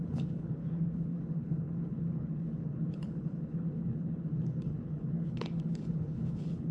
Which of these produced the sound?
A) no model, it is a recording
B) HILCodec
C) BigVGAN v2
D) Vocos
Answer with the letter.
B